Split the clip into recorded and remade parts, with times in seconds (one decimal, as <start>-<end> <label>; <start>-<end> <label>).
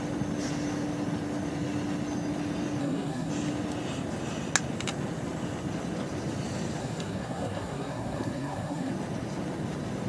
0.0-2.8 recorded; 2.8-3.3 remade; 3.3-6.8 recorded; 6.8-8.9 remade; 8.9-10.1 recorded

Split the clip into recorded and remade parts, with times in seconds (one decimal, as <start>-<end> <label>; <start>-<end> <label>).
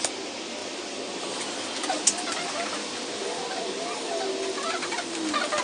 0.0-5.6 recorded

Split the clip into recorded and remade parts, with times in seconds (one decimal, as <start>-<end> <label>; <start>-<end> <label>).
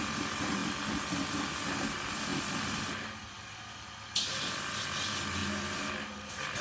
0.0-6.6 recorded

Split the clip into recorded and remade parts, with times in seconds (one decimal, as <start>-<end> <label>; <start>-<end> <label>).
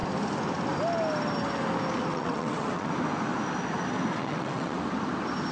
0.0-2.1 recorded; 2.1-2.9 remade; 2.9-4.1 recorded; 4.1-4.8 remade; 4.8-5.5 recorded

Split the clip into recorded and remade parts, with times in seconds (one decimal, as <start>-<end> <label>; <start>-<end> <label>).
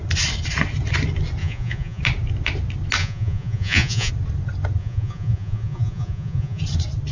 0.0-1.4 recorded; 1.4-2.0 remade; 2.0-3.0 recorded; 3.0-4.1 remade; 4.1-4.8 recorded; 4.8-6.6 remade; 6.6-7.1 recorded